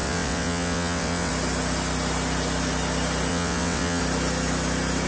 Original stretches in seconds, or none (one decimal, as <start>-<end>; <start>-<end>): 1.3-3.3; 4.0-5.1